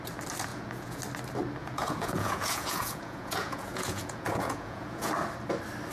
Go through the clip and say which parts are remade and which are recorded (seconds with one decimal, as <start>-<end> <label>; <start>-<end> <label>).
0.0-0.5 recorded; 0.5-1.0 remade; 1.0-1.6 recorded; 1.6-5.1 remade; 5.1-5.9 recorded